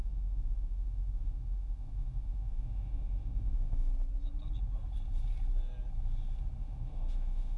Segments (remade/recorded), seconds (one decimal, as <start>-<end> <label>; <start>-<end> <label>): 0.0-3.9 remade; 3.9-6.6 recorded; 6.6-7.6 remade